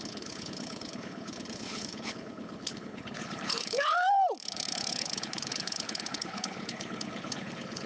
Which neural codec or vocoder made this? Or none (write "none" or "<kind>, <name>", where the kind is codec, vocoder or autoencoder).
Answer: codec, HILCodec